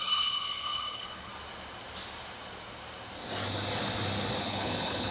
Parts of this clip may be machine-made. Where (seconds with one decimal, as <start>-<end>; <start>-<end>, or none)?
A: 0.0-1.3; 4.4-5.1